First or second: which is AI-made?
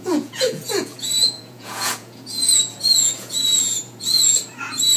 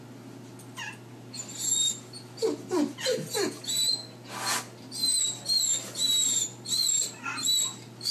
first